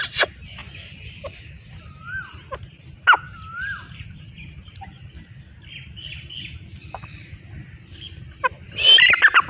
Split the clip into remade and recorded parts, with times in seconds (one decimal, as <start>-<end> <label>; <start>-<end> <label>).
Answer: 0.0-9.5 recorded